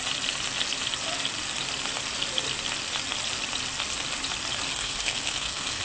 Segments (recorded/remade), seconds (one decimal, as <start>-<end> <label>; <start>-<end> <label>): 0.0-4.7 recorded; 4.7-5.8 remade